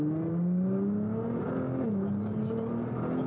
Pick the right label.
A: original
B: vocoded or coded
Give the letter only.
A